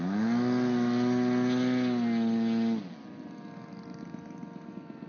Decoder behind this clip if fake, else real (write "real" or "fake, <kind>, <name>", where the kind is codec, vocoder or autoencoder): real